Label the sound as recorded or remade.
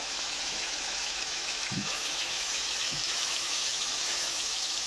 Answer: remade